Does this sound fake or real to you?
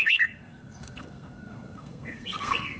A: fake